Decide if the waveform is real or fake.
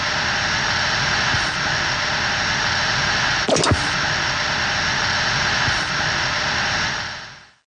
real